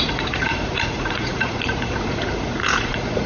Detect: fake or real fake